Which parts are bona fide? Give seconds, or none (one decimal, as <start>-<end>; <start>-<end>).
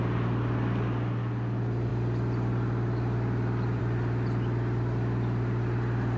0.0-6.2